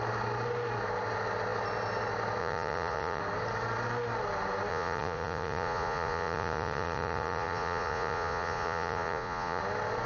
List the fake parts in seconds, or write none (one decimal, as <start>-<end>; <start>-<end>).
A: 2.4-3.2; 4.7-9.6